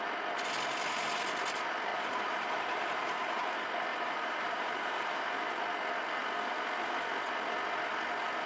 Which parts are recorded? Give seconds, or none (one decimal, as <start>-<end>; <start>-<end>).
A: 0.0-1.9; 3.5-3.9; 5.6-8.5